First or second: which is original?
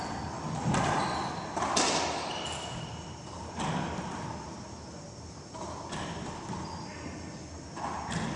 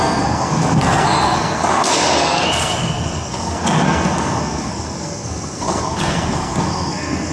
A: first